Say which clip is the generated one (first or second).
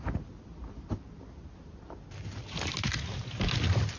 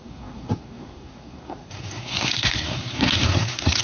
second